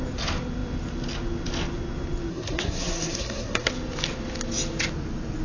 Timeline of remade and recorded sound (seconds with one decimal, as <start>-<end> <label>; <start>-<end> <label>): 0.0-2.3 recorded; 2.3-3.7 remade; 3.7-5.4 recorded